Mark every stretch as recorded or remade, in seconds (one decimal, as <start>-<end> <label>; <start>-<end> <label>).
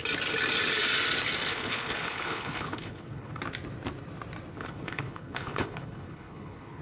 0.0-1.5 recorded; 1.5-3.4 remade; 3.4-4.5 recorded; 4.5-6.8 remade